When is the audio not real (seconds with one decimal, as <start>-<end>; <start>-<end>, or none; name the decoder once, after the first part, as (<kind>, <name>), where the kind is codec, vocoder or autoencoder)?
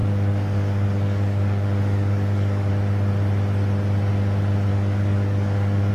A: 0.0-2.7 (codec, DAC); 4.7-5.9